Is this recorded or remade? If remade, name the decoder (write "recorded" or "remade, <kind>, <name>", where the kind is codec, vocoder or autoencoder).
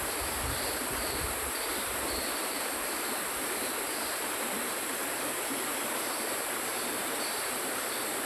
remade, vocoder, BigVGAN v2